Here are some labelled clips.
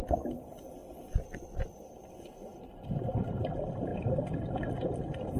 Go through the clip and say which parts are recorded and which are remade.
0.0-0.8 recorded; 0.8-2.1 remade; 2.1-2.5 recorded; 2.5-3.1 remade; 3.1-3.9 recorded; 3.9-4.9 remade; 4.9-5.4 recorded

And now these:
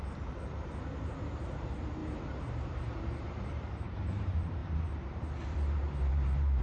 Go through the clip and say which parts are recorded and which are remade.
0.0-6.6 remade

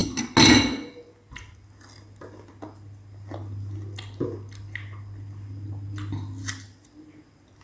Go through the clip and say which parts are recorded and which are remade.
0.0-7.6 recorded

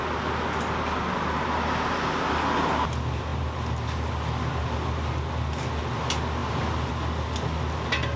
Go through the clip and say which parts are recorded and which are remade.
0.0-8.2 recorded

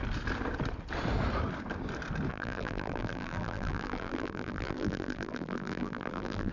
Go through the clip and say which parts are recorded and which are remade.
0.0-2.3 recorded; 2.3-6.5 remade